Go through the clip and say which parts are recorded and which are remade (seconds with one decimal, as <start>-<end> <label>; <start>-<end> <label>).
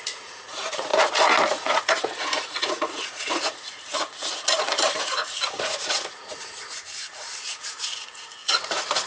0.0-0.9 remade; 0.9-1.5 recorded; 1.5-9.1 remade